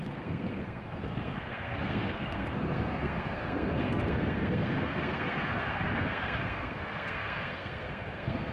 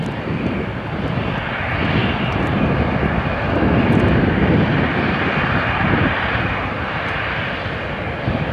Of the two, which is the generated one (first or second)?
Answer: first